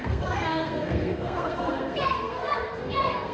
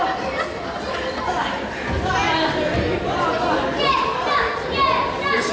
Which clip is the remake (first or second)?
first